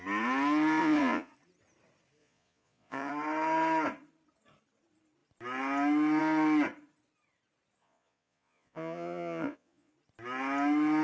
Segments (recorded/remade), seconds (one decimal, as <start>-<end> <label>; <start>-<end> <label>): 0.0-0.8 recorded; 0.8-1.3 remade; 1.3-2.2 recorded; 2.2-3.1 remade; 3.1-7.8 recorded; 7.8-9.9 remade; 9.9-11.0 recorded